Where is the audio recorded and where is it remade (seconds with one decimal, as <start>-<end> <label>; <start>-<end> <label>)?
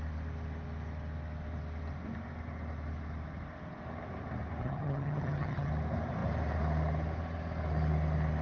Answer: 0.0-4.6 recorded; 4.6-5.7 remade; 5.7-8.4 recorded